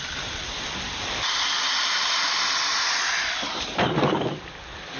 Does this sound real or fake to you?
fake